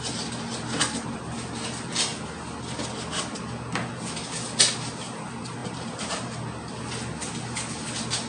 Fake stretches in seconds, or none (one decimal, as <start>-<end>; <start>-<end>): 5.6-6.8